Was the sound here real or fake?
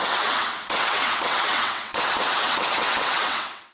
fake